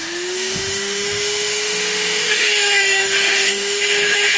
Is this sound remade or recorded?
remade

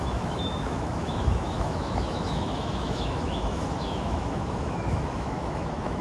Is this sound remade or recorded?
remade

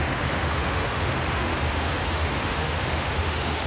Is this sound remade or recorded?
remade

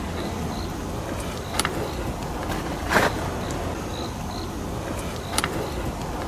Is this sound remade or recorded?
recorded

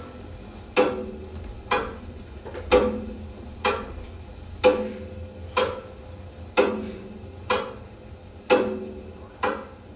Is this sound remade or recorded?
recorded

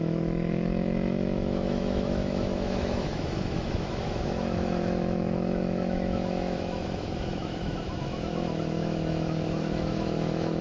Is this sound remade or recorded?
remade